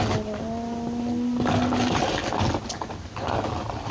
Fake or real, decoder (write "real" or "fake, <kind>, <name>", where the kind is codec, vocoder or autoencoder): real